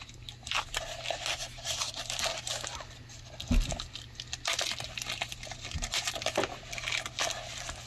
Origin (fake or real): real